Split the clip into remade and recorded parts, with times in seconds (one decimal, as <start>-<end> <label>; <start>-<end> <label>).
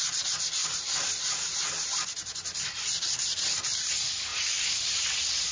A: 0.0-0.6 recorded; 0.6-3.9 remade; 3.9-4.3 recorded; 4.3-5.0 remade; 5.0-5.5 recorded